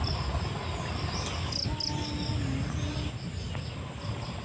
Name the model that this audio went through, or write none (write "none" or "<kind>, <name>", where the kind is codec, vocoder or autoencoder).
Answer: none